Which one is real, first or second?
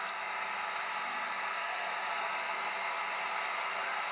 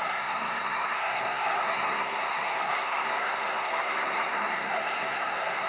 first